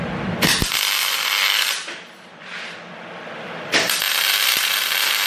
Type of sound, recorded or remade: remade